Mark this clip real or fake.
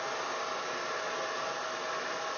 real